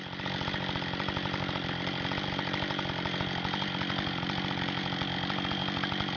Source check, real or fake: real